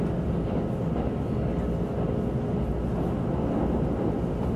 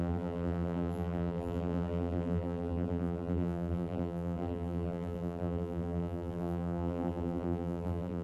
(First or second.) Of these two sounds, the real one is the first